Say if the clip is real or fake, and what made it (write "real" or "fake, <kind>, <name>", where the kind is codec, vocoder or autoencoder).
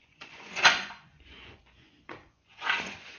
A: fake, vocoder, Vocos